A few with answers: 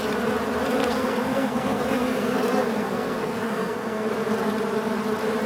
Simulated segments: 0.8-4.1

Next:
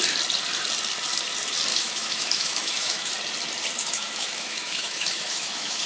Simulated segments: 1.7-3.1; 3.8-5.9